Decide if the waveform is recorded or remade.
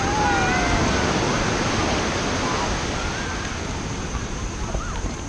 recorded